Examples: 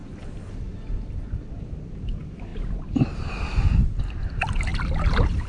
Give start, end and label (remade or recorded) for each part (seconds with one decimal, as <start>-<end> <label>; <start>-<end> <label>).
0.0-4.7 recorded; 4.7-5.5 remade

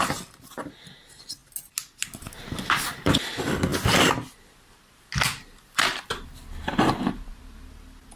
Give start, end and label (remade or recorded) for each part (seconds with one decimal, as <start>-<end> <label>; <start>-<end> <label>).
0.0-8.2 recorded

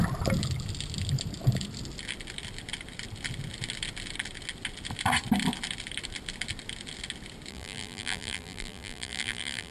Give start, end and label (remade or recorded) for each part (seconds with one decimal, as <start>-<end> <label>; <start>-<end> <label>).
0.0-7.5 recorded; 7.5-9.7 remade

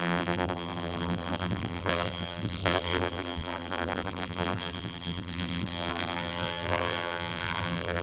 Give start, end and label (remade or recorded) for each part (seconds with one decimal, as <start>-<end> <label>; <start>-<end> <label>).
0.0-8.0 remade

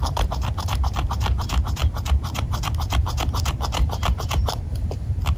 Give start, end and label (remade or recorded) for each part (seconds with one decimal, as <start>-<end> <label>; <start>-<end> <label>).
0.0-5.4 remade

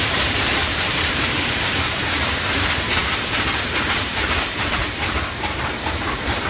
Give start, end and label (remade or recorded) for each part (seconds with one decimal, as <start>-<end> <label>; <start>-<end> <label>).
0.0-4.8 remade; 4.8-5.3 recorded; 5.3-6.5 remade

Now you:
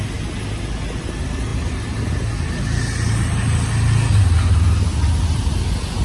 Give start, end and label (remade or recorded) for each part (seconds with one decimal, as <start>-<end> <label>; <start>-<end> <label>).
0.0-6.0 recorded